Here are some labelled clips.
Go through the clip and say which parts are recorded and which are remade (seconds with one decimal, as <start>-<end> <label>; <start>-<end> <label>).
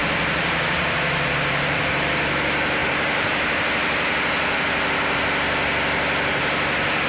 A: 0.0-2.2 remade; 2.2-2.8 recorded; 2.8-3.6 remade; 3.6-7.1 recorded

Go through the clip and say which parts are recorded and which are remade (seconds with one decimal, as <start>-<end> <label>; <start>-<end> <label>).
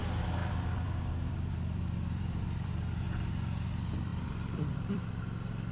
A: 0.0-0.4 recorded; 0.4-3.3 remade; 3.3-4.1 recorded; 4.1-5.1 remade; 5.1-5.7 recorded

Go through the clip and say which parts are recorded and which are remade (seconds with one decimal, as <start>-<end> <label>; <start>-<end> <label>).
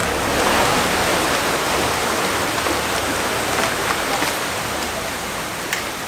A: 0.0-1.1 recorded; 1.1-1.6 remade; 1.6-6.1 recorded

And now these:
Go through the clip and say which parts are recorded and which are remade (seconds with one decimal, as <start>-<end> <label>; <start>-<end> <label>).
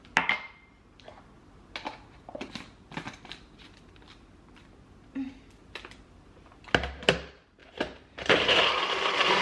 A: 0.0-7.6 recorded; 7.6-8.8 remade; 8.8-9.4 recorded